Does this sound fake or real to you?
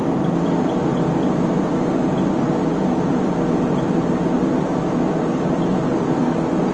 real